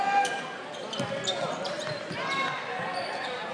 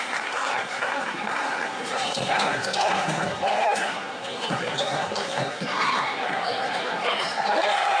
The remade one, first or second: second